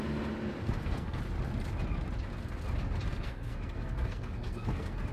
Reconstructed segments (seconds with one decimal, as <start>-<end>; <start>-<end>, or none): 0.6-1.2; 3.1-5.1